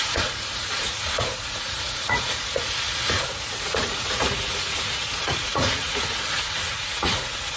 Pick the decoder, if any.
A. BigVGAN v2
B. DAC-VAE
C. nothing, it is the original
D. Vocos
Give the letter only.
D